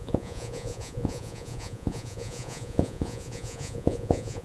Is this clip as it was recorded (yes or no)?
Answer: no